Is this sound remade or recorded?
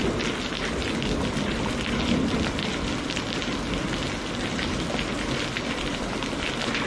recorded